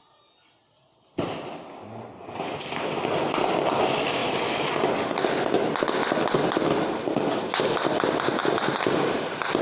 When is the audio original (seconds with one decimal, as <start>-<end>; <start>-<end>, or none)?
0.0-9.6